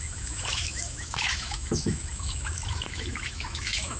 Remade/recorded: remade